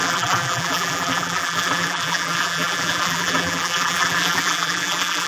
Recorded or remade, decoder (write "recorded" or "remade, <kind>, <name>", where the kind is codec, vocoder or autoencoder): remade, vocoder, BigVGAN v2